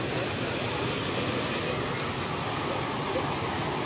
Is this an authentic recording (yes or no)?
yes